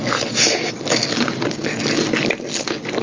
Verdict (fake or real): real